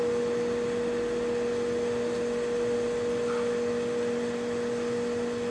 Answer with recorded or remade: recorded